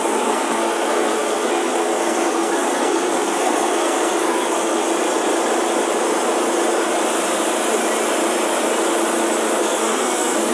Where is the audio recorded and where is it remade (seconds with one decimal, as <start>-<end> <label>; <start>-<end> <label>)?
0.0-4.8 remade; 4.8-9.6 recorded; 9.6-10.5 remade